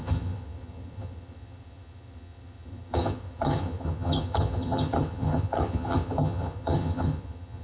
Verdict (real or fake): fake